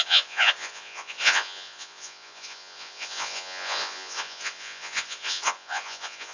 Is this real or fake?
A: fake